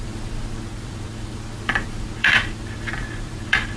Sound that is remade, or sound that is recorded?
remade